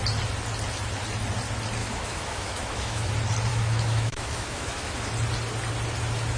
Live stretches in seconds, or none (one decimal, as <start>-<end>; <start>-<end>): 0.0-1.8; 3.1-3.5; 5.1-6.4